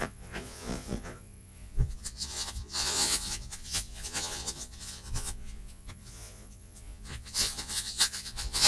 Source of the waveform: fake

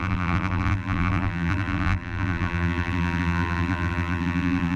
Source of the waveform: fake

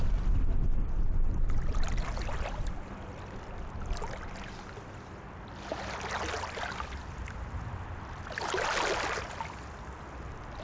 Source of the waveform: real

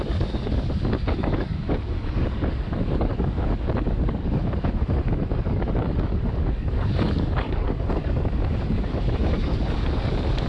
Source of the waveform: fake